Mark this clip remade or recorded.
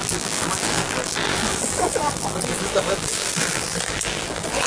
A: remade